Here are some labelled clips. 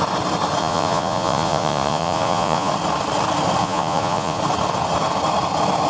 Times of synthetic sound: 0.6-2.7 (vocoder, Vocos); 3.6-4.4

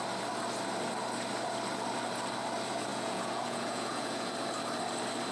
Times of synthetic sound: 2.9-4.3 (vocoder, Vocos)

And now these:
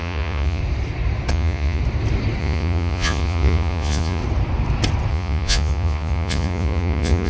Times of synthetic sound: 0.0-0.6 (vocoder, Vocos); 1.3-1.8; 2.4-4.2; 5.1-7.3

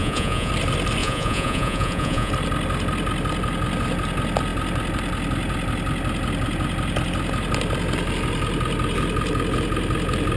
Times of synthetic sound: 0.0-0.5 (vocoder, Vocos); 1.0-2.3

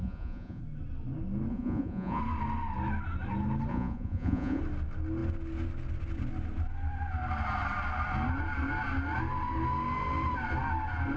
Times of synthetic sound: 0.0-0.6 (vocoder, Vocos); 1.5-2.2; 3.7-4.6